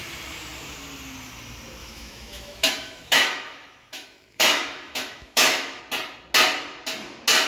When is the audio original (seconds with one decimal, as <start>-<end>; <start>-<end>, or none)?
0.0-1.8; 5.8-7.5